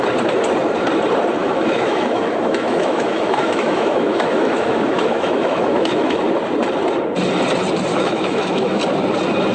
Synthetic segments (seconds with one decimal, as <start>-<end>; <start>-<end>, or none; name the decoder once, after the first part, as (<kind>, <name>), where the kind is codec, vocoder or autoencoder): 1.4-6.2 (autoencoder, DAC-VAE); 7.9-8.8